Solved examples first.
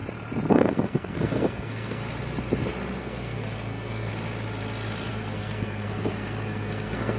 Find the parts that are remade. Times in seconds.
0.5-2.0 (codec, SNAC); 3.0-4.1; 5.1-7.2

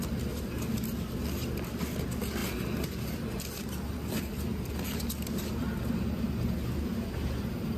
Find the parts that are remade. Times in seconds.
none

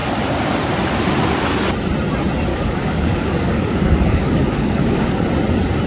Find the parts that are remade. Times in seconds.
2.5-5.2 (codec, DAC)

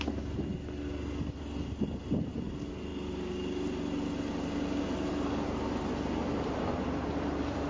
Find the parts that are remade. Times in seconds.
none

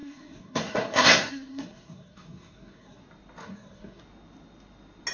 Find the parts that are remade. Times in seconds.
0.0-3.0 (codec, SNAC); 3.4-4.0